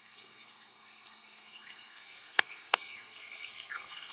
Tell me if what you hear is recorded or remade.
remade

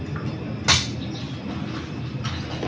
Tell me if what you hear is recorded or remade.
recorded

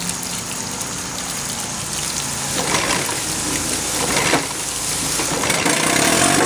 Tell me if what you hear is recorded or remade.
recorded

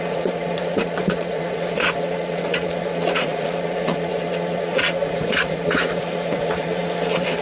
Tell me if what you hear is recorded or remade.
remade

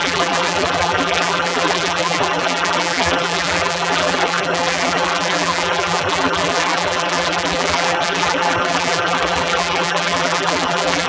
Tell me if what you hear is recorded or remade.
remade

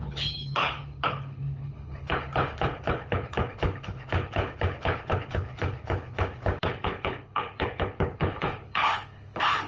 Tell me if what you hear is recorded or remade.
remade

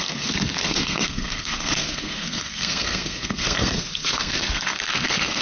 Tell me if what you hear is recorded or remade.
remade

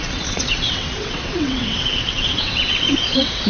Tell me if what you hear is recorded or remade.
remade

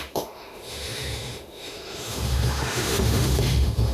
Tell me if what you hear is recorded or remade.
remade